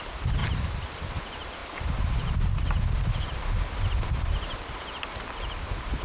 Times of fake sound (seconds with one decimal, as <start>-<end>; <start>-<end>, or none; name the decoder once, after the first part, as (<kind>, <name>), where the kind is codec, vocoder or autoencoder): 1.6-2.5 (vocoder, BigVGAN v2)